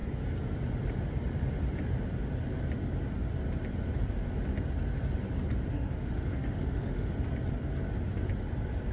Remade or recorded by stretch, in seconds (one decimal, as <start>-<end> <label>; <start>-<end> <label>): 0.0-5.7 recorded; 5.7-7.1 remade; 7.1-8.9 recorded